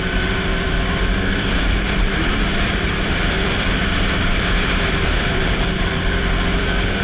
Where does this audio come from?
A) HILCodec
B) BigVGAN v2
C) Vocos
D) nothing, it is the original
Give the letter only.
B